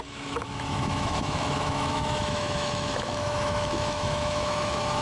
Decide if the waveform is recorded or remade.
remade